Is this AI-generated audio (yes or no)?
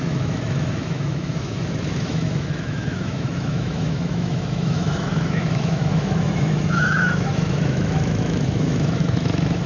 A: yes